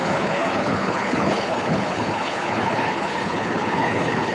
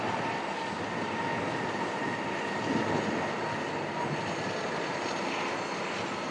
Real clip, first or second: second